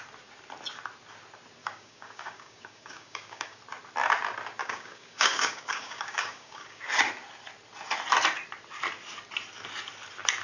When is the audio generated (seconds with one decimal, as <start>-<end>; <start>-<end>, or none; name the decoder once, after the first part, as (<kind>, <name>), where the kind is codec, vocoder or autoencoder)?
1.6-3.6 (codec, DAC); 4.6-6.8